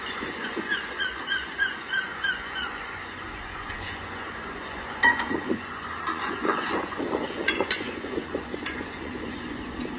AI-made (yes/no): yes